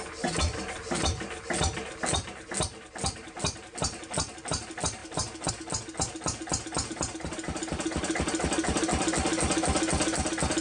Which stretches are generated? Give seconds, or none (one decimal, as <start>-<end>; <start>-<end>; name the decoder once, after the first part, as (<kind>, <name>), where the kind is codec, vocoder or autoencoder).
none